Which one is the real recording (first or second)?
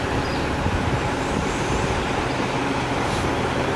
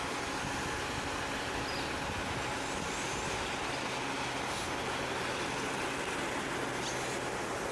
second